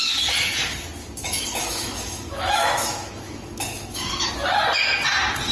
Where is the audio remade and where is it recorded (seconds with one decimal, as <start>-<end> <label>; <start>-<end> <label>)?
0.0-1.0 recorded; 1.0-4.3 remade; 4.3-5.5 recorded